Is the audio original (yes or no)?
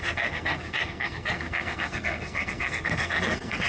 no